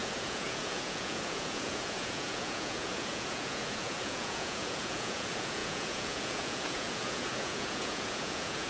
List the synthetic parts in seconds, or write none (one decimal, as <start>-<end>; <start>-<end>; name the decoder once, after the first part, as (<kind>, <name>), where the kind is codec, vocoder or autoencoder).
0.0-8.7 (vocoder, Vocos)